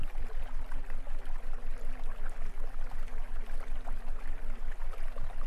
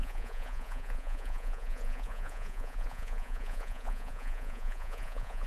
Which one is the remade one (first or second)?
second